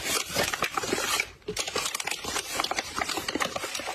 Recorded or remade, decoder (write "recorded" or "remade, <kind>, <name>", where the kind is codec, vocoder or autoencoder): recorded